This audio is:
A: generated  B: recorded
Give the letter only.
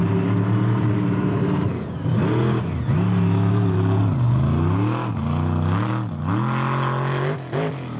B